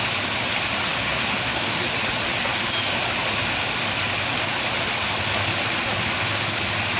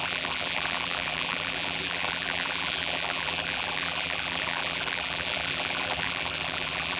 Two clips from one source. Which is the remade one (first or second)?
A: second